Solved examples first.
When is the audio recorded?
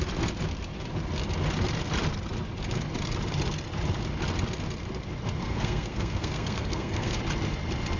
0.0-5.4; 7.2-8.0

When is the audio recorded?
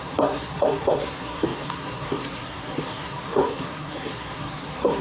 none